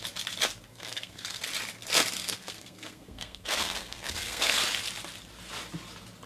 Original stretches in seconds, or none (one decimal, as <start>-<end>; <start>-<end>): 0.0-0.7; 1.4-2.2; 4.6-6.3